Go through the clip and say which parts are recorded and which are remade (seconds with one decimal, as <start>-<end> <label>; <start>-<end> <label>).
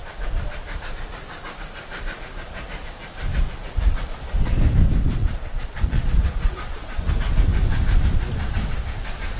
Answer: 0.0-5.2 recorded; 5.2-7.1 remade; 7.1-9.4 recorded